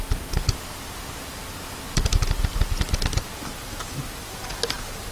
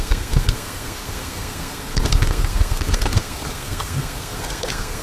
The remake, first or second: second